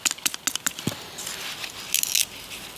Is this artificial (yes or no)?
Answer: no